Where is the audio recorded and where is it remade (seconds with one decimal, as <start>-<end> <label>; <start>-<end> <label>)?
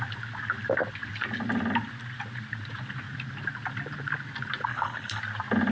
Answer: 0.0-4.7 recorded; 4.7-5.2 remade; 5.2-5.7 recorded